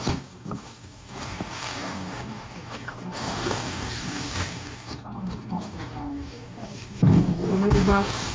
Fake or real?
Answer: fake